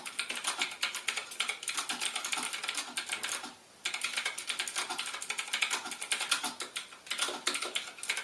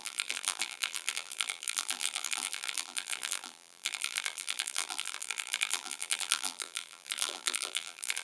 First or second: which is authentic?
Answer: first